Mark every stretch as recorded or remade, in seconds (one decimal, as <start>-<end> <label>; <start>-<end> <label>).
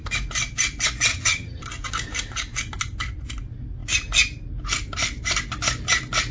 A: 0.0-1.1 recorded; 1.1-1.6 remade; 1.6-6.3 recorded